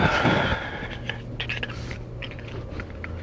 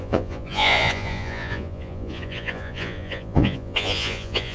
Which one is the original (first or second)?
first